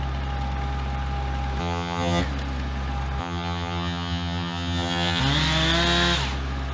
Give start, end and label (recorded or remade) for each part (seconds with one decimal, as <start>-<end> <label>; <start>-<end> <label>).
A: 0.0-1.6 recorded; 1.6-2.2 remade; 2.2-3.2 recorded; 3.2-5.2 remade; 5.2-6.7 recorded